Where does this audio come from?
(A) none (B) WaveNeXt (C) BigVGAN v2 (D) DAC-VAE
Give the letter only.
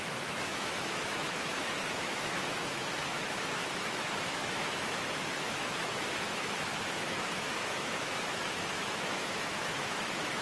D